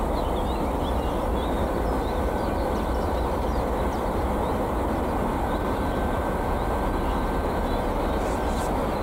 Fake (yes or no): no